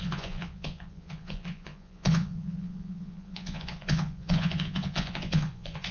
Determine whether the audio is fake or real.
fake